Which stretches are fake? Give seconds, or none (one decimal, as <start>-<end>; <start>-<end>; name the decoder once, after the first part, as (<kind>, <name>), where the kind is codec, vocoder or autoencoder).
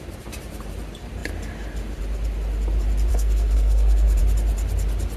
3.1-4.2 (codec, SNAC)